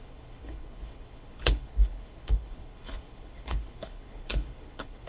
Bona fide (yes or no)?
no